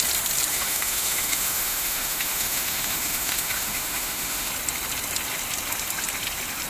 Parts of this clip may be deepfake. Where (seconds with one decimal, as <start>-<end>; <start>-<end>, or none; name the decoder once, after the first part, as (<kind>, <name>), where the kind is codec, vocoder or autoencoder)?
0.5-4.5 (autoencoder, DAC-VAE)